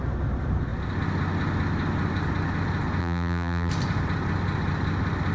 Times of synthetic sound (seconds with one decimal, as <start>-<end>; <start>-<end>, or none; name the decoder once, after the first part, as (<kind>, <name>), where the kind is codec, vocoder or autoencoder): 3.0-3.7 (vocoder, BigVGAN v2)